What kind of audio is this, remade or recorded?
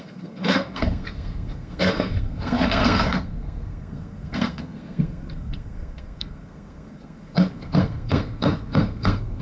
remade